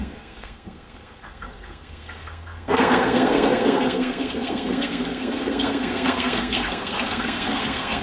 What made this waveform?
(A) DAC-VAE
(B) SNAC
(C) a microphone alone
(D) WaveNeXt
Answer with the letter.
B